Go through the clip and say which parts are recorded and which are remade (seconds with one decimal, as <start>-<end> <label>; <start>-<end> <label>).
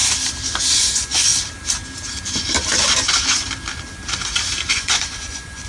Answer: 0.0-0.8 recorded; 0.8-1.3 remade; 1.3-4.7 recorded; 4.7-5.7 remade